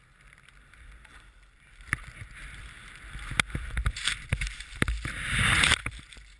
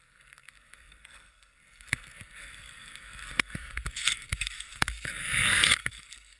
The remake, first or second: second